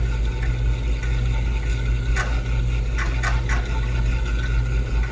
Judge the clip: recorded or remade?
recorded